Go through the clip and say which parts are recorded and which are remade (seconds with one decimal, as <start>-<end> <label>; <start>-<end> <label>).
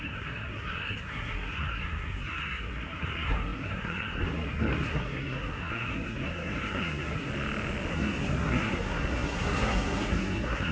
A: 0.0-7.3 remade; 7.3-7.9 recorded; 7.9-10.7 remade